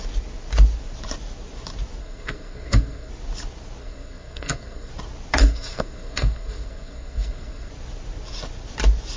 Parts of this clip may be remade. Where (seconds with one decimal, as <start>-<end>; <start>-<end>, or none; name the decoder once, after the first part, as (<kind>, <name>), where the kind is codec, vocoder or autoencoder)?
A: 2.0-3.1 (codec, SNAC); 3.8-4.9; 5.4-7.7